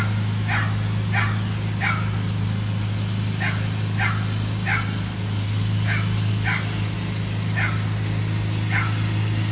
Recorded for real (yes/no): yes